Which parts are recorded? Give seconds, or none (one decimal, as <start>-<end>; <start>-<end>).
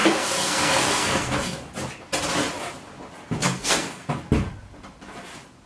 1.7-3.4; 4.1-5.7